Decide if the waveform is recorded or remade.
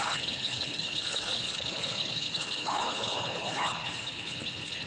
remade